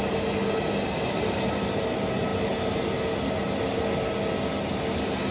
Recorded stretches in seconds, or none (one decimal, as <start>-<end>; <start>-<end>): 0.0-5.3

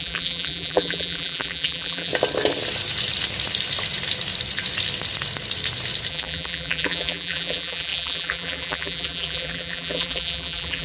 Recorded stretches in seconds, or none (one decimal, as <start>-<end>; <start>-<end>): 2.1-6.1